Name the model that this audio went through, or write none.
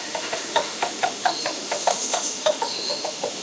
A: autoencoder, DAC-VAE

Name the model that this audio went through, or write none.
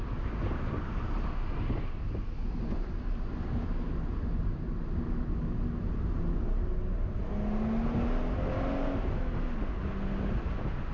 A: none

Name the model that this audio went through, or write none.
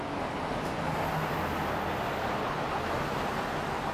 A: none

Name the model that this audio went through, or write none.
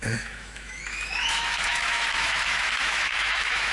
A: autoencoder, DAC-VAE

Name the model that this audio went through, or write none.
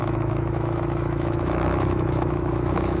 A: autoencoder, DAC-VAE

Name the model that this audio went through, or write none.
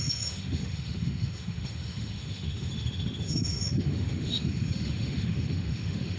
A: autoencoder, DAC-VAE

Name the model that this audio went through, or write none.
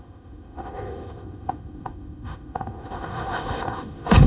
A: autoencoder, DAC-VAE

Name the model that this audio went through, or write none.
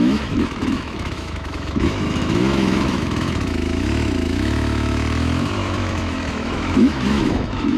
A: autoencoder, DAC-VAE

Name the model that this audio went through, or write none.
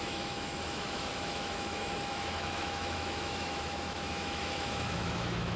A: autoencoder, DAC-VAE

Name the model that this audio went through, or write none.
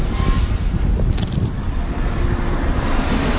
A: none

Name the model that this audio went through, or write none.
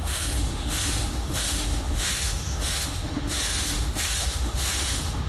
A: autoencoder, DAC-VAE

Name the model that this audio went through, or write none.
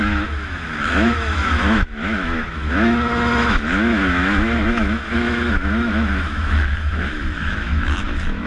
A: autoencoder, DAC-VAE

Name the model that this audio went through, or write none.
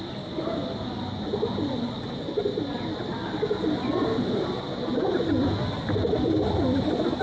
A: none